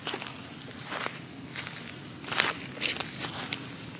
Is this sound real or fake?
real